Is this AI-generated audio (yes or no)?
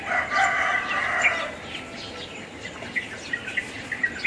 no